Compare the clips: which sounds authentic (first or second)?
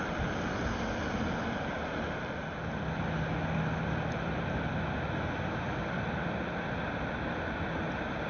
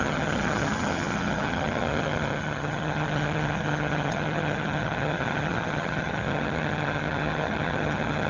first